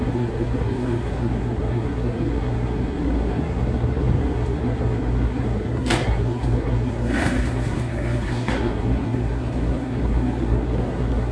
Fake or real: fake